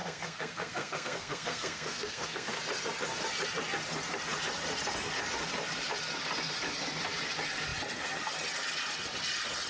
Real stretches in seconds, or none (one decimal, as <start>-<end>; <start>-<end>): 2.6-9.7